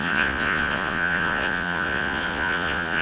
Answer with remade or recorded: remade